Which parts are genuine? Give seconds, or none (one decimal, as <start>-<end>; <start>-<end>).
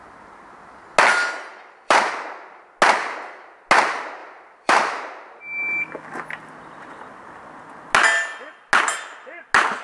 0.0-1.5; 2.1-4.2; 5.4-9.8